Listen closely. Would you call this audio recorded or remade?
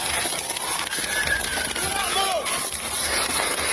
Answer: recorded